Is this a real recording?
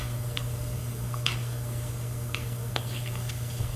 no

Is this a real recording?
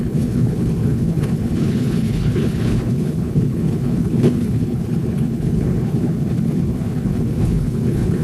no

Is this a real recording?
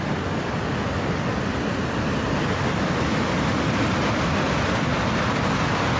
yes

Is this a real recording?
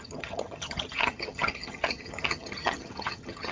no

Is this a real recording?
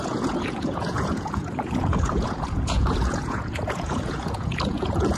no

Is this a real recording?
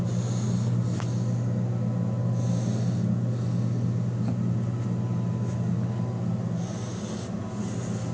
yes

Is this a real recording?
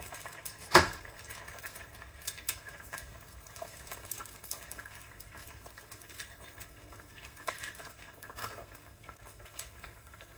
no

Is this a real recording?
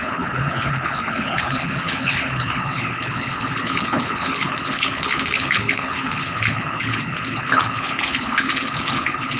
no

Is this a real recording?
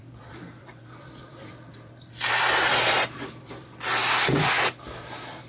no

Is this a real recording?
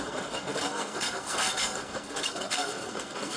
no